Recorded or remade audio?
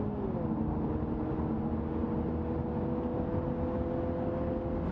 recorded